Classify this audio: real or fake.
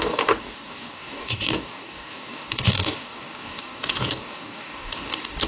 fake